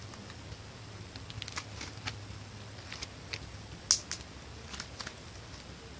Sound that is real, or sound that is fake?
real